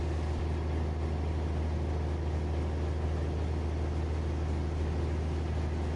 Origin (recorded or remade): recorded